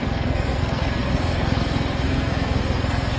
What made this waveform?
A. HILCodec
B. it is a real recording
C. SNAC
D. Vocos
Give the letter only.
C